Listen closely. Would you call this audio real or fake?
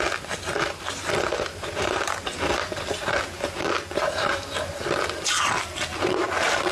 real